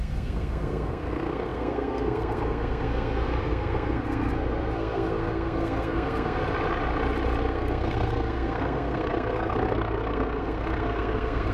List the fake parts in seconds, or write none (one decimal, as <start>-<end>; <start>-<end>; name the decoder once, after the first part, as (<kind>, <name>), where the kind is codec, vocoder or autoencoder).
0.0-6.4 (codec, SNAC); 7.4-11.5